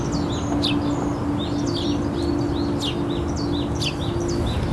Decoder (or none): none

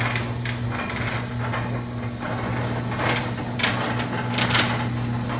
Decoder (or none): none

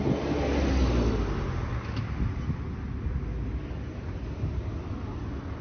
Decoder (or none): none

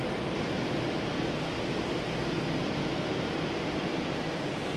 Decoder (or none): none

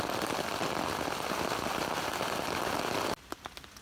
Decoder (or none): none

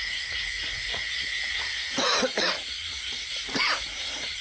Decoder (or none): vocoder, Vocos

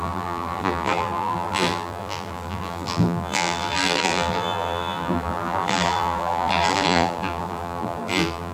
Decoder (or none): vocoder, BigVGAN v2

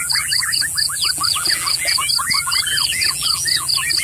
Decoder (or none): vocoder, BigVGAN v2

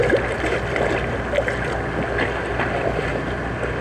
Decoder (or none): none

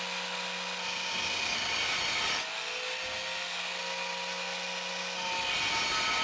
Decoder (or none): none